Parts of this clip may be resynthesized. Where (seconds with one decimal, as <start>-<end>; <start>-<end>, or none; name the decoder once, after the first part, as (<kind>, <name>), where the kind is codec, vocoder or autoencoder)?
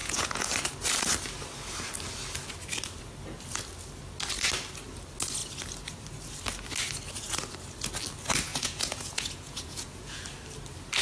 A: 0.0-0.5 (vocoder, Vocos); 8.5-10.2